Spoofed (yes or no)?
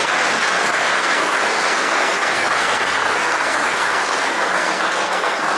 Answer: yes